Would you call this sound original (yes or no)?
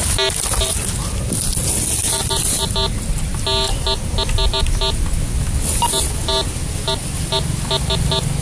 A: yes